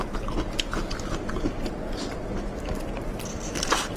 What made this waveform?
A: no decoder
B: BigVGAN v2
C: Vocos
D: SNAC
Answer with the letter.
A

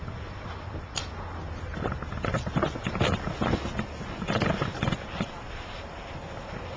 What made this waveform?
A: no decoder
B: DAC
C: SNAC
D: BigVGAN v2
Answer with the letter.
A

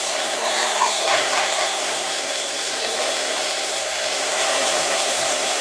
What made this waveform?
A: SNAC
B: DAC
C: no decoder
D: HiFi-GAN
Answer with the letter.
A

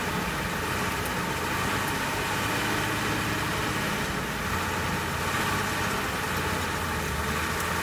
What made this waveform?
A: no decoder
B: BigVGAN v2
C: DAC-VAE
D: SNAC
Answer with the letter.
A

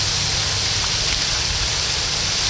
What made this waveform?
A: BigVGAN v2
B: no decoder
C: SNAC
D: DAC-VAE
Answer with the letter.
B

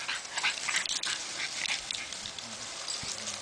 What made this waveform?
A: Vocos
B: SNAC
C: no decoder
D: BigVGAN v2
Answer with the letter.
C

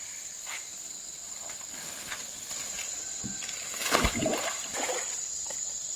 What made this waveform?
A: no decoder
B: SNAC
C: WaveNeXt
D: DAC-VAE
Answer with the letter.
A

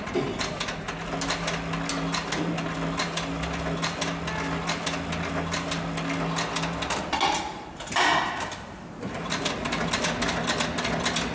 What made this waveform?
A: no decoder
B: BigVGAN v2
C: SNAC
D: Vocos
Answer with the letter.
A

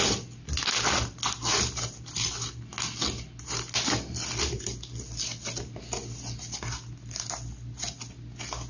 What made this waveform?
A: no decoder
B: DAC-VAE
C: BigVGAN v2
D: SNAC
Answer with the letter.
A